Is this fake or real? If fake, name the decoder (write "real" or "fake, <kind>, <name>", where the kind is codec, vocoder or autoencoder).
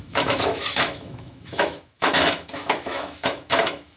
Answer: fake, autoencoder, DAC-VAE